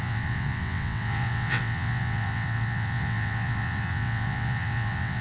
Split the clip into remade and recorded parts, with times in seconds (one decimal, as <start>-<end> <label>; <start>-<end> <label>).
0.0-5.2 remade